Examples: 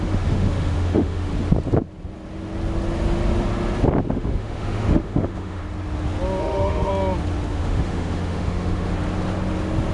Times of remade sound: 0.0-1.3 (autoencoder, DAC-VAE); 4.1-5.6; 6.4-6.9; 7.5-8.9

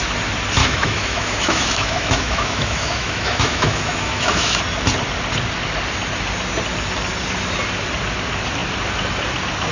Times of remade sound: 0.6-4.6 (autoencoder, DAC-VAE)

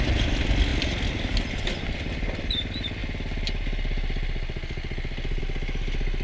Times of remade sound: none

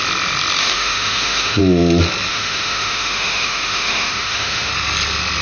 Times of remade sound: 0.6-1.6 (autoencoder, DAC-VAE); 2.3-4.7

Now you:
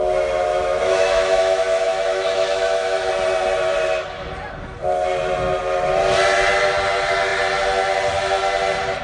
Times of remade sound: 0.5-3.1 (autoencoder, DAC-VAE)

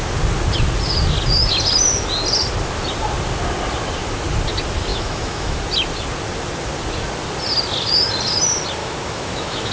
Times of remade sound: 4.9-5.6 (autoencoder, DAC-VAE); 8.8-9.7

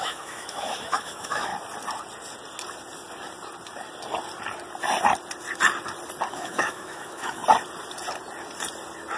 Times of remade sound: 0.0-1.5 (autoencoder, DAC-VAE); 6.3-7.4